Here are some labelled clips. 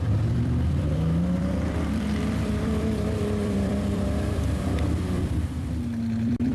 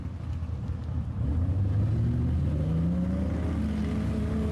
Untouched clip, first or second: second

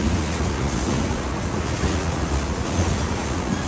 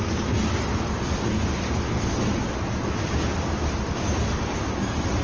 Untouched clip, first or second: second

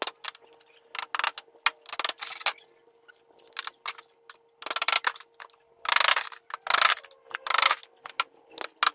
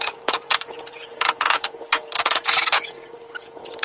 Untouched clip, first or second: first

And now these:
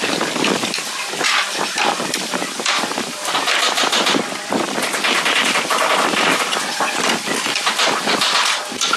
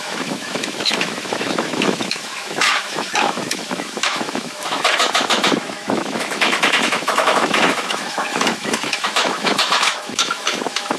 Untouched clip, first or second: first